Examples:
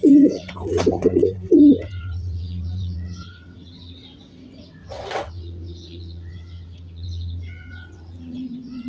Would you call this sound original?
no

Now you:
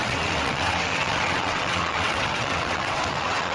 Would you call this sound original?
no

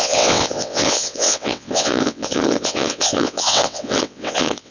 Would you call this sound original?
no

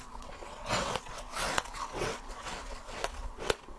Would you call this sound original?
no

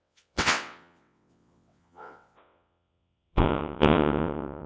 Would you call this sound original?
no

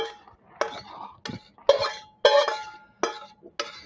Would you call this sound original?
yes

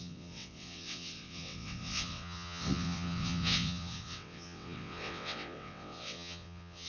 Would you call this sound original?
no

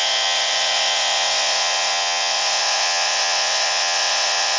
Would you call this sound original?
no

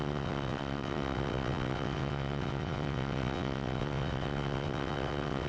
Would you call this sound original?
no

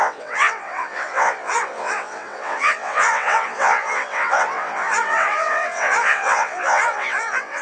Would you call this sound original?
no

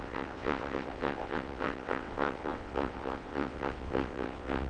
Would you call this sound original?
no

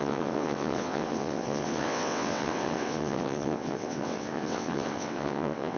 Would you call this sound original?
no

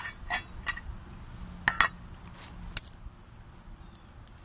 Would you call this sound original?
yes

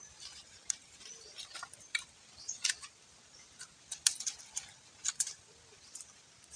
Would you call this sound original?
yes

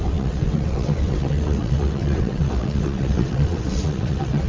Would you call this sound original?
no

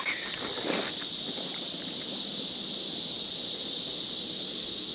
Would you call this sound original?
yes